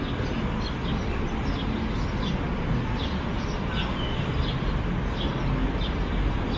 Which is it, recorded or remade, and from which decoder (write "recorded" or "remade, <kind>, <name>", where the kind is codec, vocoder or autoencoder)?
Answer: recorded